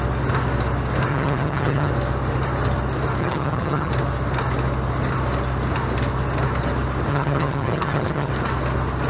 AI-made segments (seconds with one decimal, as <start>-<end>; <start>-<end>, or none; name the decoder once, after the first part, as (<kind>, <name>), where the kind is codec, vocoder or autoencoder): 1.1-1.9 (vocoder, HiFi-GAN); 3.2-3.9; 7.1-8.3